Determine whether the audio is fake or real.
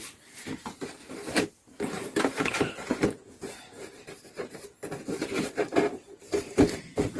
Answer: real